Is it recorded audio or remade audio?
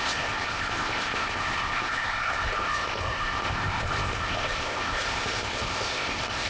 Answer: remade